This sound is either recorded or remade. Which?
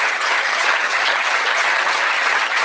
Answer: remade